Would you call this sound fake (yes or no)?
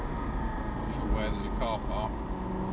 no